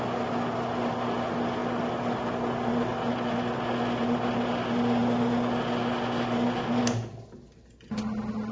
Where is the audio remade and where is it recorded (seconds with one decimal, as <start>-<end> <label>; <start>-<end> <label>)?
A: 0.0-8.5 recorded